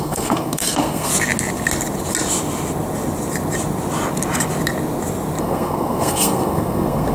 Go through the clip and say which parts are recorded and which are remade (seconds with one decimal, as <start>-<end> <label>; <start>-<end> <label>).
0.0-1.1 remade; 1.1-5.4 recorded; 5.4-7.1 remade